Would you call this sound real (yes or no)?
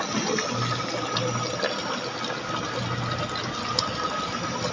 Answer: yes